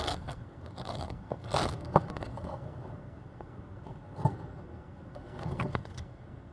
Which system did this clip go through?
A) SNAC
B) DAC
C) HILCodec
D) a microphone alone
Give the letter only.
A